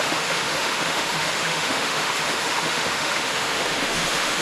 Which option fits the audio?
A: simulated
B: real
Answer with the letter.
A